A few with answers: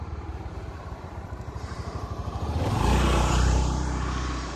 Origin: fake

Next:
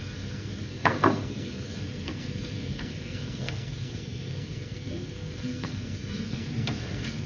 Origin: fake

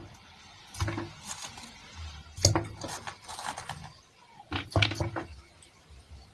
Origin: real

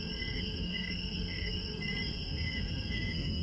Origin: fake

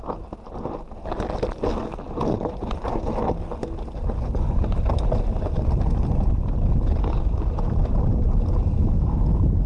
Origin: real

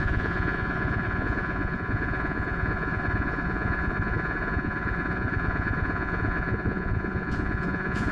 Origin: fake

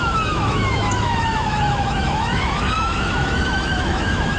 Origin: fake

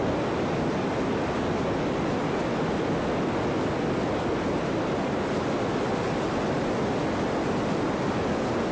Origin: real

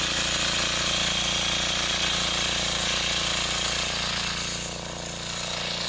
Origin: real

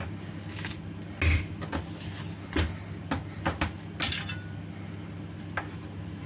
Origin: real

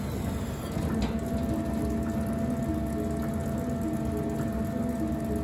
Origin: real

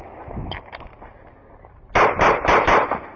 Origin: real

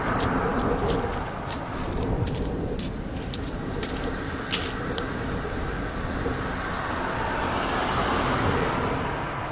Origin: real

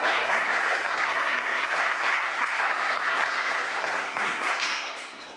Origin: fake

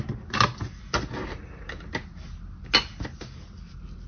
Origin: real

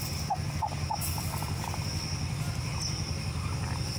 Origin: real